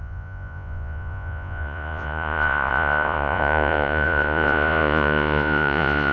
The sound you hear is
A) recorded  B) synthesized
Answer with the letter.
B